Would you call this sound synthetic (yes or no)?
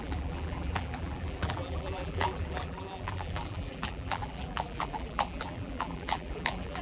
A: yes